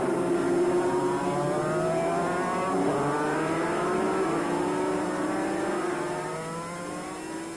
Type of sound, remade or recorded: recorded